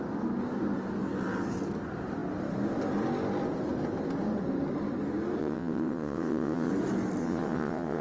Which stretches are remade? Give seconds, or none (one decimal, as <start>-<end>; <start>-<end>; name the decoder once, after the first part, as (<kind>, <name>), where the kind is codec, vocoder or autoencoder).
5.4-6.7 (vocoder, WaveNeXt); 7.2-8.0